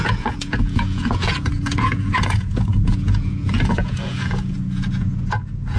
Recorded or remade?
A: remade